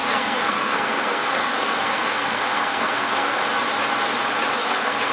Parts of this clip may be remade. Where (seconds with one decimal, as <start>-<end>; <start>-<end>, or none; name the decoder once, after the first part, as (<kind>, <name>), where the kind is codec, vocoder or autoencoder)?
0.0-3.4 (codec, SNAC); 4.5-5.1